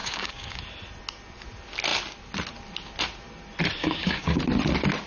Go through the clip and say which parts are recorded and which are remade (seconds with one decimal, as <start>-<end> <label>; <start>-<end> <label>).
0.0-0.6 remade; 0.6-3.8 recorded; 3.8-4.4 remade; 4.4-5.1 recorded